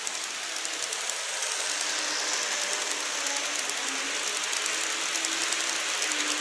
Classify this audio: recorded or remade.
recorded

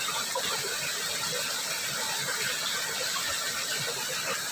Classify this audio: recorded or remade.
recorded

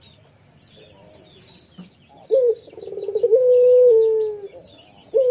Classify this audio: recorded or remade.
recorded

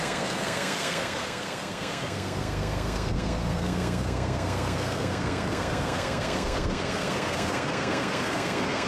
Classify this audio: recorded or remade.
remade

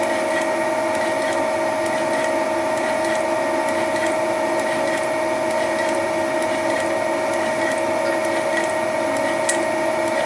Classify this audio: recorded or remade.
recorded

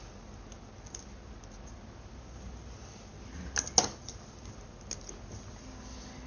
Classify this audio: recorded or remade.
recorded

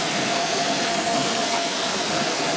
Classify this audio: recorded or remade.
remade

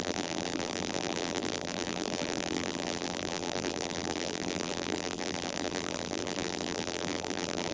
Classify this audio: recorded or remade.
remade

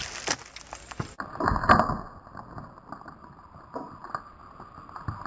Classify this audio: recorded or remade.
recorded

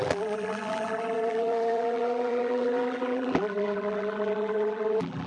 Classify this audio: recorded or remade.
remade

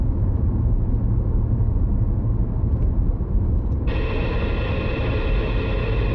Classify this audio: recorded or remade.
recorded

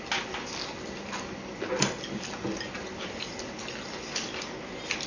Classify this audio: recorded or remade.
recorded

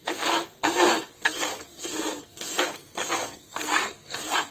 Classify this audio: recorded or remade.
remade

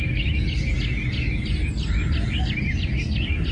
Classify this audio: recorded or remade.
recorded